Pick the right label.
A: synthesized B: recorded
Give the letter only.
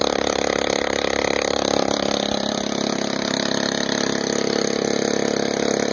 B